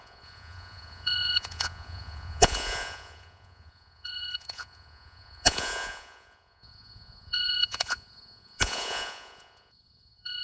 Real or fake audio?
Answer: fake